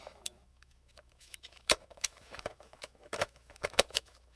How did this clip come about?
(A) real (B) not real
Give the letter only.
B